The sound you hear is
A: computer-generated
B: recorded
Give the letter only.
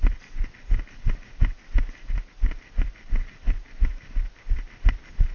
B